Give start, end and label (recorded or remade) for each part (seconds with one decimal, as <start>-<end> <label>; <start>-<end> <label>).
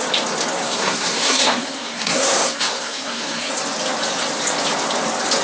0.0-0.6 recorded; 0.6-3.5 remade; 3.5-5.4 recorded